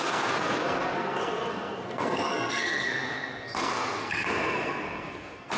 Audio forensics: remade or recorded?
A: remade